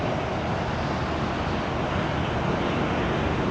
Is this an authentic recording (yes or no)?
yes